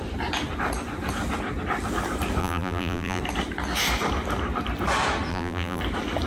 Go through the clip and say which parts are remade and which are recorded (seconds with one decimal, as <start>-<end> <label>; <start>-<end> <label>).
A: 0.0-2.4 recorded; 2.4-3.2 remade; 3.2-5.3 recorded; 5.3-5.8 remade; 5.8-6.3 recorded